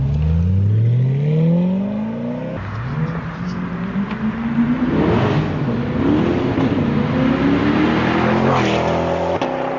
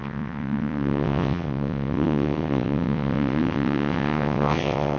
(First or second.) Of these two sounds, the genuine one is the first